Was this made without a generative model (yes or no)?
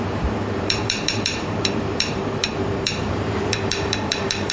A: no